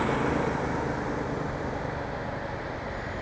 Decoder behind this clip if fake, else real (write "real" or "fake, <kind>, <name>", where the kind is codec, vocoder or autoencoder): real